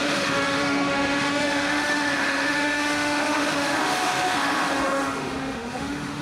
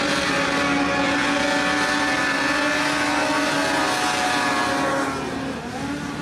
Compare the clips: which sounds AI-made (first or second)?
first